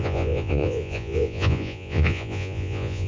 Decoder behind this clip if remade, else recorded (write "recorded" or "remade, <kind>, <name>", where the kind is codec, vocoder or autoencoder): remade, vocoder, Vocos